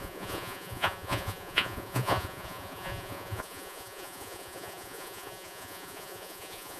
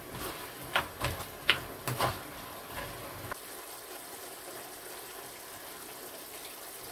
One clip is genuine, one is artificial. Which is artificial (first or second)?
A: first